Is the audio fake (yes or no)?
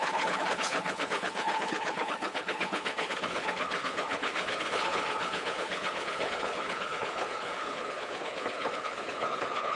yes